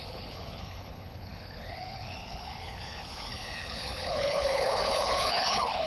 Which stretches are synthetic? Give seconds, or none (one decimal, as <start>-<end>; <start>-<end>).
0.0-5.9